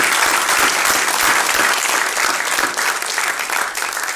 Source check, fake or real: real